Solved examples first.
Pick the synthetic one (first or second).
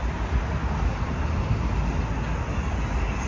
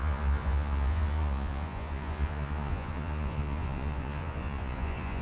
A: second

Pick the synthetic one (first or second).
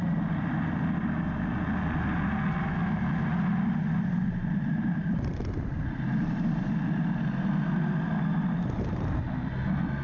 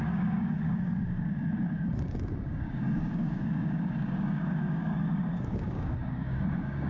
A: second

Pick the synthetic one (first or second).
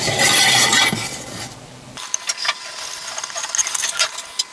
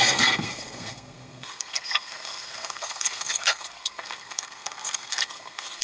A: second